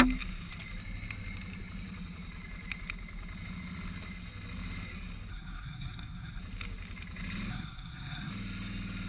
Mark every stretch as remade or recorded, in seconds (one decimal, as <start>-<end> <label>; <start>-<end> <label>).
0.0-5.3 recorded; 5.3-6.4 remade; 6.4-7.5 recorded; 7.5-8.3 remade; 8.3-9.1 recorded